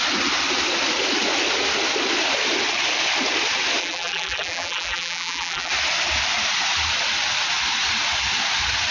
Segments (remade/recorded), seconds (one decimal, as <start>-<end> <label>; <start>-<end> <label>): 0.0-3.8 recorded; 3.8-5.7 remade; 5.7-8.9 recorded